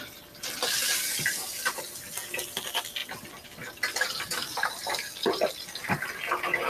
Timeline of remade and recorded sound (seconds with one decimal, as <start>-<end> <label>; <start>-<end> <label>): 0.0-6.7 recorded